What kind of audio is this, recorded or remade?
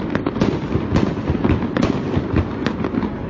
recorded